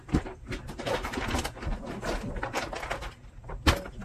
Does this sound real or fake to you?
real